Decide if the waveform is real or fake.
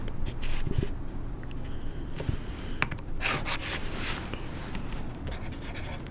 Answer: real